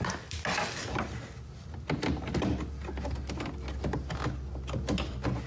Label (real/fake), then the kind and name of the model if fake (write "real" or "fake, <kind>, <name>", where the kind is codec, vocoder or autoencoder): real